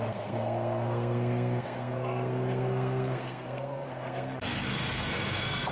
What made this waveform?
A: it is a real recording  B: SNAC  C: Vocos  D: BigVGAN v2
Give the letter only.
B